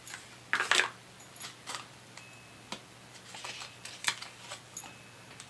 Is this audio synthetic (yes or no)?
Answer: no